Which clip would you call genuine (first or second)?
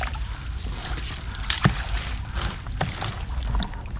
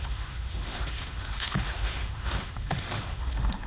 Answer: first